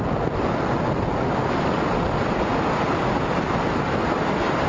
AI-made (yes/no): no